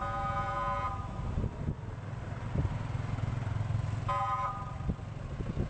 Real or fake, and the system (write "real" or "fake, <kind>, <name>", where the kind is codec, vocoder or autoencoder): real